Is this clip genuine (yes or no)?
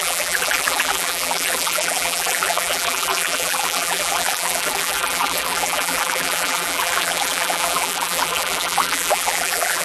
no